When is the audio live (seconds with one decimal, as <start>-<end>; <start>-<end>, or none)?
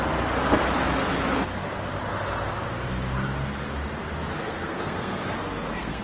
0.0-4.3